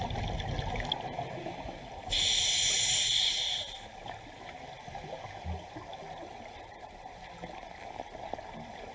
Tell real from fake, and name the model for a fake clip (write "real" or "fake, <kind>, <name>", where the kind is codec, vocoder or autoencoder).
real